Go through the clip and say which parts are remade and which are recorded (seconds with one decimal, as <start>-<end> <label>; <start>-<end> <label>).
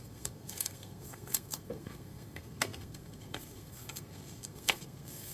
0.0-5.3 remade